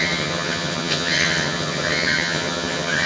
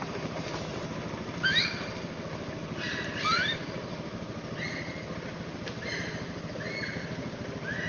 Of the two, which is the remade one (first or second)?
first